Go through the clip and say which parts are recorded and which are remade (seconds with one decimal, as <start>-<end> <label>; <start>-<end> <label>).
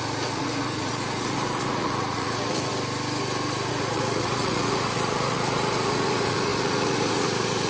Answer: 0.0-2.7 remade; 2.7-3.7 recorded; 3.7-7.7 remade